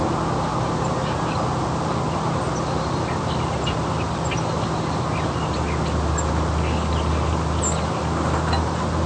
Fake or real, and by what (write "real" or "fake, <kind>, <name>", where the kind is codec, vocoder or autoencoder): real